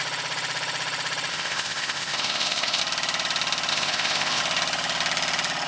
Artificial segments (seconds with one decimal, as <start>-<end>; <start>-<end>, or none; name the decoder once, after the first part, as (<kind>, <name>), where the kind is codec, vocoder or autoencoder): 1.3-2.8 (codec, ZipCodec); 3.7-4.4